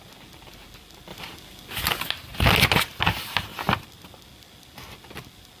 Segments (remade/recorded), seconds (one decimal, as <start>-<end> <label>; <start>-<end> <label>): 0.0-5.6 recorded